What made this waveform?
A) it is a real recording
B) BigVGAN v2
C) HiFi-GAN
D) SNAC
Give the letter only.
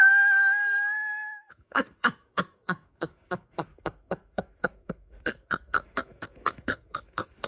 D